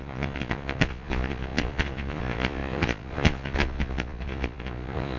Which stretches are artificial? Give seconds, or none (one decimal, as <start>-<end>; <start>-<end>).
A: 0.0-5.2